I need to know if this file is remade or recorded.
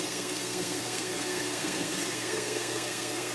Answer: remade